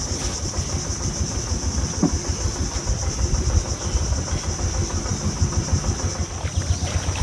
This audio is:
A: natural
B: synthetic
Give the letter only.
B